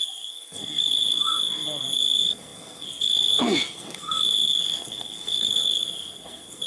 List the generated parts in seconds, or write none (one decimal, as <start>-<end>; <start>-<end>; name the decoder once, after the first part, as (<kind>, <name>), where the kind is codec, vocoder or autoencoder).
0.0-6.7 (codec, SNAC)